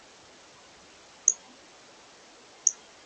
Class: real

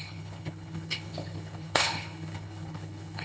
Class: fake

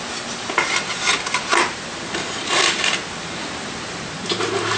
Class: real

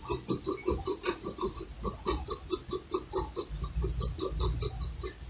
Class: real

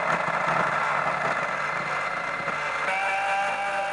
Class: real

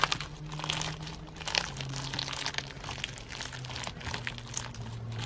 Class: real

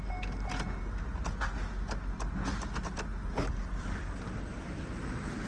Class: real